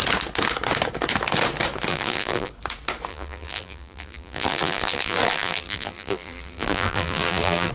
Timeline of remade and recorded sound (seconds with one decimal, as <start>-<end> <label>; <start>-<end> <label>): 0.0-1.9 recorded; 1.9-2.5 remade; 2.5-3.1 recorded; 3.1-7.7 remade